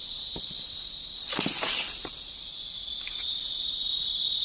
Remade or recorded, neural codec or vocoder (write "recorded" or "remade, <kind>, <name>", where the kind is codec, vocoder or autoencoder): remade, vocoder, BigVGAN v2